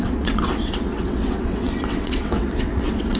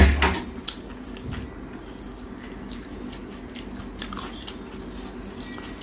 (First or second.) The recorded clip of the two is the second